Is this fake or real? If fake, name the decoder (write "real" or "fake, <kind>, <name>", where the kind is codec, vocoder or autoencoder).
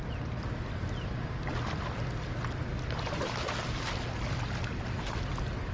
real